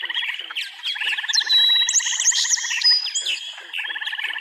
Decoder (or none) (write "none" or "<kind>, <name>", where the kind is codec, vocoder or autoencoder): none